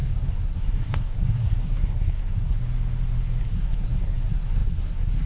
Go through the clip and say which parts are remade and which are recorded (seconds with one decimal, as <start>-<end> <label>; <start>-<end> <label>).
0.0-2.6 remade; 2.6-3.4 recorded; 3.4-5.3 remade